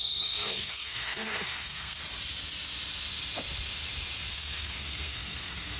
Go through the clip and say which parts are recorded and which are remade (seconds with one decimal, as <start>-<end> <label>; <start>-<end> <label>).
0.0-2.0 remade; 2.0-4.3 recorded; 4.3-5.8 remade